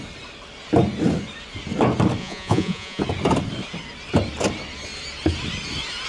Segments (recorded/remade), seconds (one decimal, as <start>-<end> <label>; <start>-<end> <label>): 0.0-2.2 recorded; 2.2-3.0 remade; 3.0-6.1 recorded